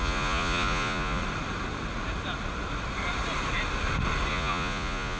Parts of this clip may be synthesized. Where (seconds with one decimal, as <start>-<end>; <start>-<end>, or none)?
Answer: 0.0-1.2; 4.3-5.2